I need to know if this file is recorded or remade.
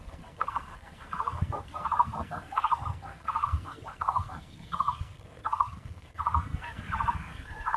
remade